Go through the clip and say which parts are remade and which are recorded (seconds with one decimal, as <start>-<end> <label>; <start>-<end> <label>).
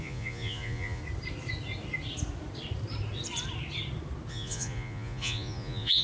0.0-1.0 remade; 1.0-4.3 recorded; 4.3-6.0 remade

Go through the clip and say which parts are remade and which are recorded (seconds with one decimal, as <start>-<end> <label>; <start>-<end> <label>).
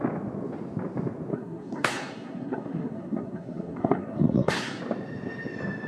0.0-1.3 recorded; 1.3-4.8 remade; 4.8-5.9 recorded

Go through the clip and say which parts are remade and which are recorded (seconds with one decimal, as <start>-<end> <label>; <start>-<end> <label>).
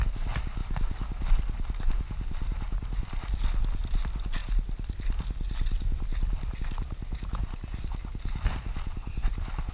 0.0-9.7 recorded